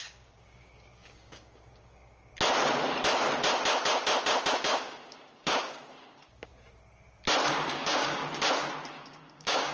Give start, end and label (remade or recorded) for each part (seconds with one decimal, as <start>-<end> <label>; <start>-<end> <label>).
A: 0.0-2.3 remade; 2.3-4.5 recorded; 4.5-6.5 remade; 6.5-7.5 recorded; 7.5-8.2 remade; 8.2-8.9 recorded; 8.9-9.7 remade